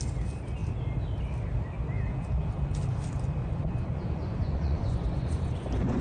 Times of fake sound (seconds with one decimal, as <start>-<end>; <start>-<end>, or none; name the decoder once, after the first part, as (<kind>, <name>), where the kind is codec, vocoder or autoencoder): 3.4-6.0 (vocoder, Vocos)